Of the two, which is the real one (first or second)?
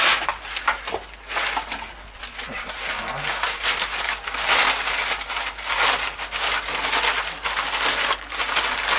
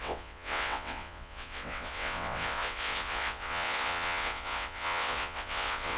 first